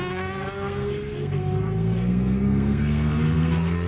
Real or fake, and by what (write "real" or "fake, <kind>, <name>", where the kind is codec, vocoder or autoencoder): fake, codec, SNAC